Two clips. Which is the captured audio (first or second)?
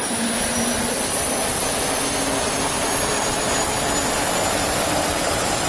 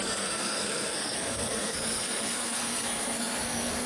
first